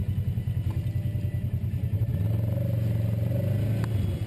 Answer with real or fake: real